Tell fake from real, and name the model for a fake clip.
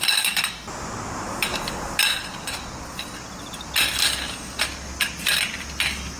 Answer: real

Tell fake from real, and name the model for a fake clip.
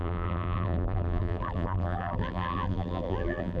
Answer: fake, vocoder, BigVGAN v2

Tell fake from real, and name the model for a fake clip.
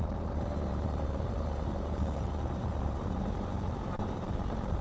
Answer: fake, vocoder, BigVGAN v2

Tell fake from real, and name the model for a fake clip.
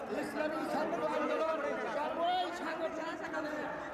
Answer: real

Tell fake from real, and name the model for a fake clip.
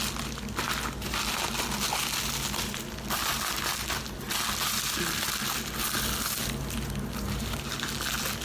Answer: real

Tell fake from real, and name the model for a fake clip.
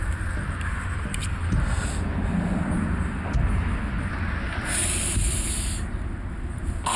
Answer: real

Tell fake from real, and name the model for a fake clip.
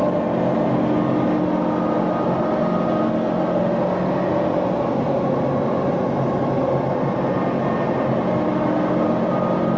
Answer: real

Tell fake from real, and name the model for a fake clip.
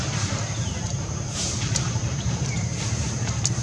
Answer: fake, vocoder, BigVGAN v2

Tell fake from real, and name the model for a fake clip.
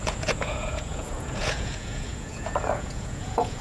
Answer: fake, vocoder, Vocos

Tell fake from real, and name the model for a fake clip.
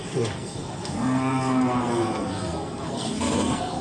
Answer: fake, codec, SNAC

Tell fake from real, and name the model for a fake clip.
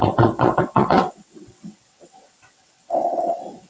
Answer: fake, vocoder, WaveNeXt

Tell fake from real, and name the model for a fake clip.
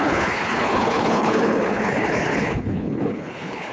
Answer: fake, codec, HILCodec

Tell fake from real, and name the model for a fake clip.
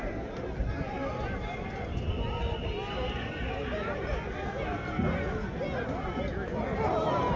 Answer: real